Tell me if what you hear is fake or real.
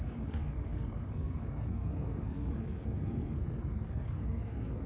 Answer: fake